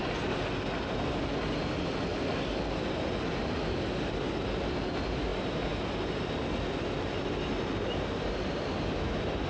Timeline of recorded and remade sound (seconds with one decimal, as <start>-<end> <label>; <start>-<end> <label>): 0.0-9.5 recorded